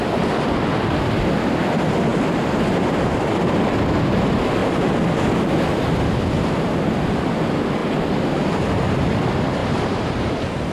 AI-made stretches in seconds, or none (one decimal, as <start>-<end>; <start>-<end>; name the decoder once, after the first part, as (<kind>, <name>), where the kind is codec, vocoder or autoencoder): 9.6-10.7 (vocoder, BigVGAN v2)